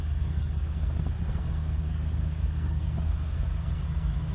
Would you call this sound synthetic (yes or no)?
yes